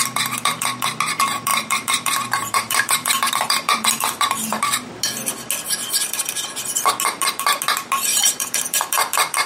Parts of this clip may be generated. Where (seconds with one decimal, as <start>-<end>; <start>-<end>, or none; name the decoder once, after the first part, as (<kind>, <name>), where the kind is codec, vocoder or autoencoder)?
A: 1.5-4.9 (vocoder, BigVGAN v2); 8.1-9.5